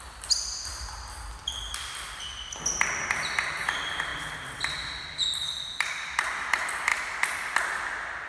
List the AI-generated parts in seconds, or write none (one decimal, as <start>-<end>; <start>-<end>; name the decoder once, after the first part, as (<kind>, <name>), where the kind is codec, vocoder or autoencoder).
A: none